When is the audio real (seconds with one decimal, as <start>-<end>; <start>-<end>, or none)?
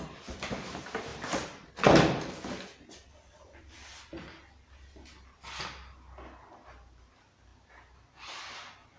0.0-9.0